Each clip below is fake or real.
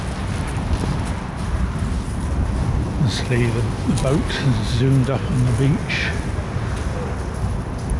real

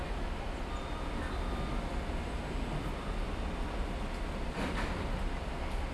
real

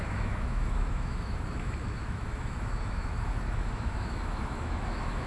fake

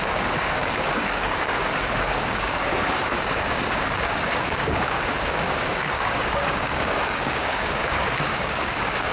fake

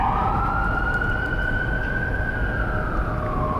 real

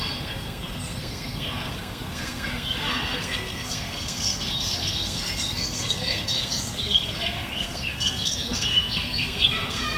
fake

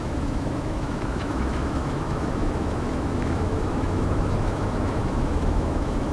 fake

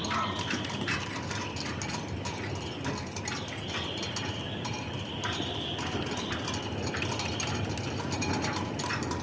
real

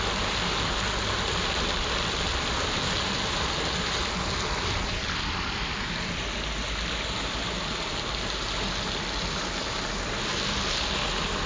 real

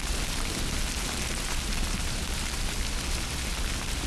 real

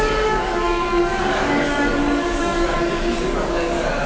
fake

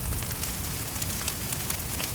fake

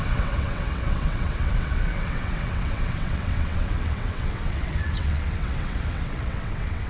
fake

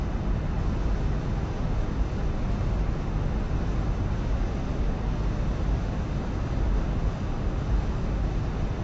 real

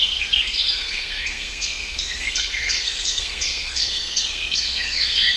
fake